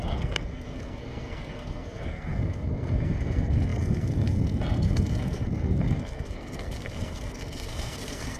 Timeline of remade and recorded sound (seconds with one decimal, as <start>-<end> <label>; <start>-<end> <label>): 0.0-8.4 remade